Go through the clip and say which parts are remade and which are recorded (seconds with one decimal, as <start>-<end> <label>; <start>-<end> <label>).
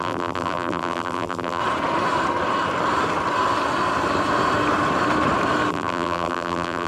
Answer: 0.0-1.6 remade; 1.6-5.7 recorded; 5.7-6.9 remade